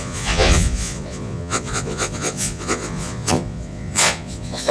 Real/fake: fake